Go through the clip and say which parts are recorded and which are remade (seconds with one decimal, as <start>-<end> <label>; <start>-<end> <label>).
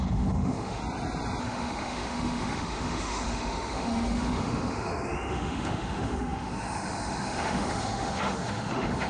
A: 0.0-0.8 remade; 0.8-1.4 recorded; 1.4-9.1 remade